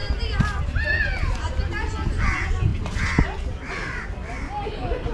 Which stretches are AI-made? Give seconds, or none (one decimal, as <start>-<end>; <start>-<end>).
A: none